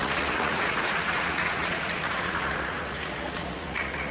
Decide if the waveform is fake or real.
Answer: fake